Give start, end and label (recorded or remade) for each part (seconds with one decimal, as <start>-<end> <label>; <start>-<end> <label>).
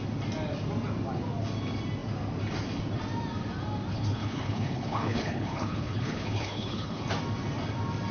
0.0-3.9 recorded; 3.9-7.0 remade; 7.0-8.1 recorded